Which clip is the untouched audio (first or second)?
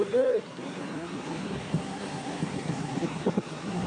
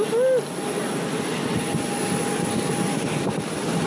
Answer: second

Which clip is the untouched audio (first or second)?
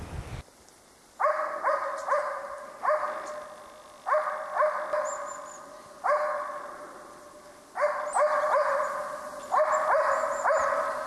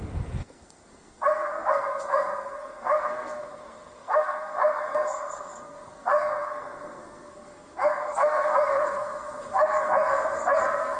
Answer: first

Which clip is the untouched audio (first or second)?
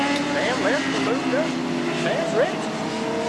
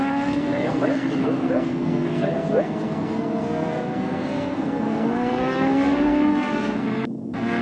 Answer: first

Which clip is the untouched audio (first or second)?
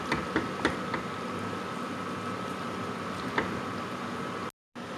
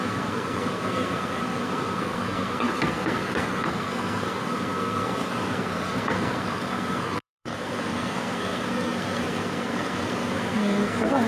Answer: first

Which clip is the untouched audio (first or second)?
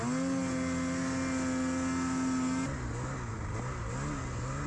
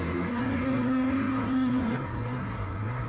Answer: first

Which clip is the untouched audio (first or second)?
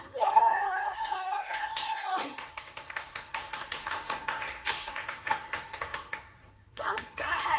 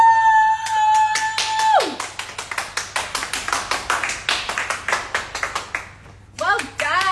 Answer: second